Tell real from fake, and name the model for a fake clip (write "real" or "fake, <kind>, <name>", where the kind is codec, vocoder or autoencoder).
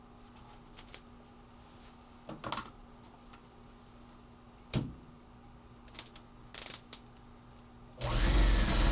real